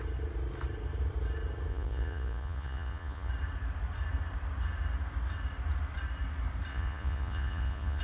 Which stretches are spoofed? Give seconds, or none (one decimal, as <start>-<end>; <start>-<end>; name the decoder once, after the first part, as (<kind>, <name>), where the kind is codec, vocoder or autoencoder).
1.7-3.3 (vocoder, Vocos); 6.7-8.0